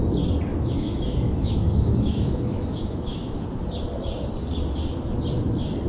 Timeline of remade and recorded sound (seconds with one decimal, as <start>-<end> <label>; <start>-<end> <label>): 0.0-0.5 recorded; 0.5-3.4 remade; 3.4-5.9 recorded